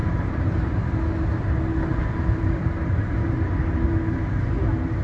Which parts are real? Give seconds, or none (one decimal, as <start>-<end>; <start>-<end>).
1.0-1.9; 4.6-5.0